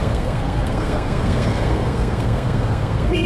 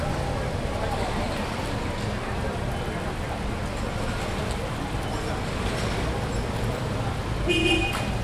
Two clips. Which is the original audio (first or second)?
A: second